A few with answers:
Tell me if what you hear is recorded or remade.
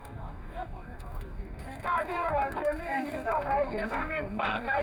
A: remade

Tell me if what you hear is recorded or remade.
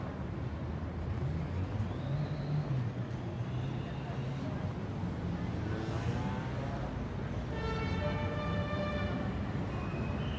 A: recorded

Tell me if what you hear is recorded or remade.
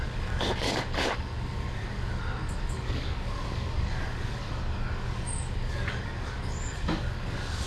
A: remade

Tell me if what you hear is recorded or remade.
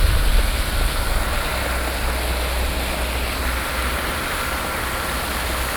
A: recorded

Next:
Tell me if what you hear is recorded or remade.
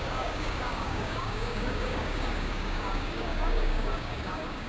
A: remade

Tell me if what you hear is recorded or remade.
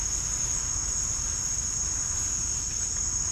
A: recorded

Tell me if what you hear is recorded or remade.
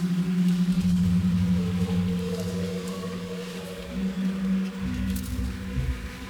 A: remade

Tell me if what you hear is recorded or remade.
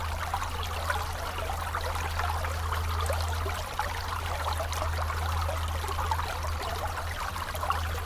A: recorded